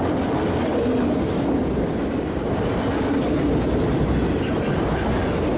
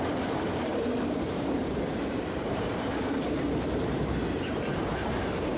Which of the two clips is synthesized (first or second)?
second